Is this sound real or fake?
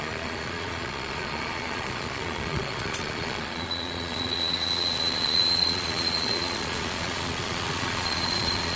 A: fake